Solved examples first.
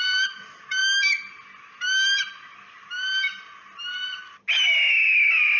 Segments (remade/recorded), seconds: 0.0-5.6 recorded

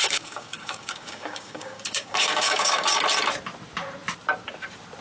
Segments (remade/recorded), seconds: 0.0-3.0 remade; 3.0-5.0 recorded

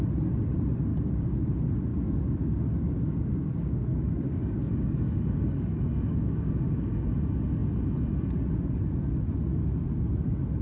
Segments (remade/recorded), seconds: 0.0-0.9 recorded; 0.9-1.5 remade; 1.5-1.9 recorded; 1.9-7.1 remade; 7.1-10.6 recorded

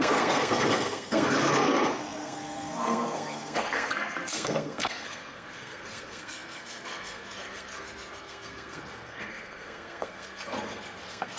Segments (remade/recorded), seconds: 0.0-11.4 remade